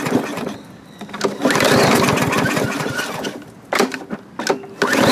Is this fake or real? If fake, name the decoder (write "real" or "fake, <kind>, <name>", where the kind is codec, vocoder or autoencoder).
real